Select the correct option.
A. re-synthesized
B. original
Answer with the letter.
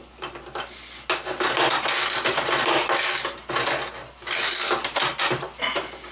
B